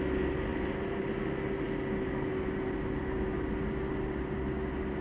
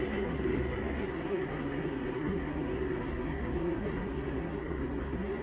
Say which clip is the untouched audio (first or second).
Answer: first